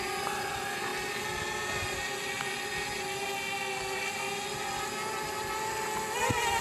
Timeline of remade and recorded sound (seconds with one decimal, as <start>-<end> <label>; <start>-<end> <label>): 0.0-6.6 recorded